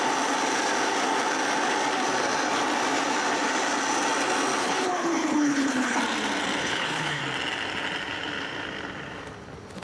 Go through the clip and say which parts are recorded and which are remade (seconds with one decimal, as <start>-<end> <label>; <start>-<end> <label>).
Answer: 0.0-4.6 recorded; 4.6-6.0 remade; 6.0-6.6 recorded; 6.6-7.2 remade; 7.2-9.8 recorded